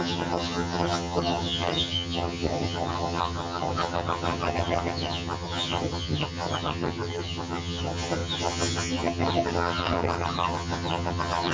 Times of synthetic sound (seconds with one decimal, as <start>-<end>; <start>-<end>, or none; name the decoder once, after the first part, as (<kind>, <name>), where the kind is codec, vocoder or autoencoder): 0.0-11.5 (vocoder, HiFi-GAN)